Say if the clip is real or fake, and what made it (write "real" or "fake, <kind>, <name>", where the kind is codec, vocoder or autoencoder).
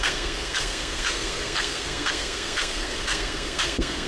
fake, codec, SNAC